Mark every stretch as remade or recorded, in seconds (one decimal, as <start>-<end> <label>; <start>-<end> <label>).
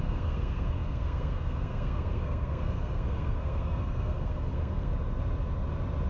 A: 0.0-4.9 remade; 4.9-6.1 recorded